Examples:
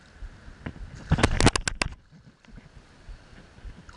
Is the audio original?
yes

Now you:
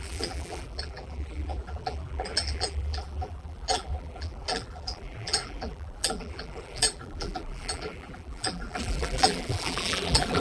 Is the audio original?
no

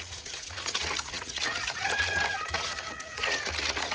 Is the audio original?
no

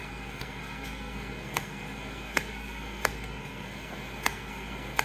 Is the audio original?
no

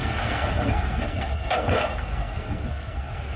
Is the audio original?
no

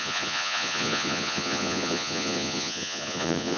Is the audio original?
no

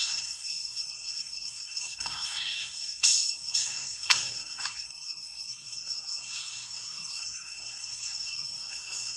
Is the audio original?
no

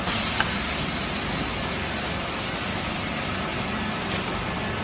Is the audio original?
yes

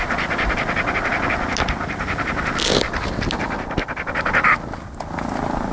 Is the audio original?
yes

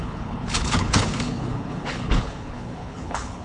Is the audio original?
no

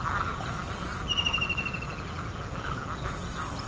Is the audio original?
yes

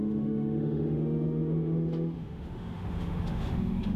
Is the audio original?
no